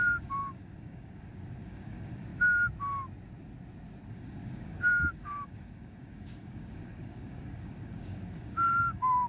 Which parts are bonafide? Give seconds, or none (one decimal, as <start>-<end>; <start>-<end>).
2.3-4.1